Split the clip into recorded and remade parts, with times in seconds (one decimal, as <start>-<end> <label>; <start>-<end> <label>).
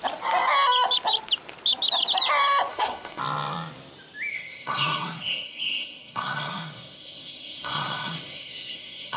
0.0-2.7 recorded; 2.7-3.2 remade; 3.2-4.3 recorded; 4.3-9.2 remade